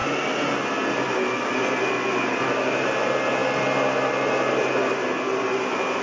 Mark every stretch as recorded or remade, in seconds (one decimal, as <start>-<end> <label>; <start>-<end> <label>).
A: 0.0-6.0 recorded